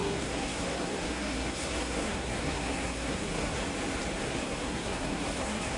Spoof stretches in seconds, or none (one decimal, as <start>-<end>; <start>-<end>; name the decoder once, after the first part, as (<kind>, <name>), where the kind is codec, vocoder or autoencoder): 0.0-3.6 (codec, SNAC); 4.2-5.8